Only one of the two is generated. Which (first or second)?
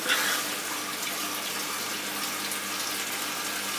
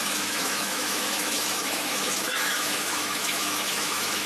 second